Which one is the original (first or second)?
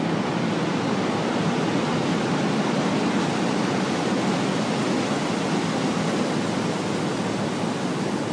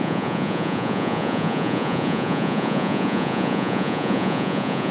first